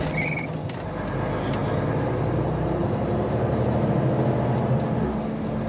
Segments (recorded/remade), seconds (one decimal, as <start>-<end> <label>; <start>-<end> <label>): 0.0-2.8 recorded; 2.8-3.9 remade; 3.9-5.7 recorded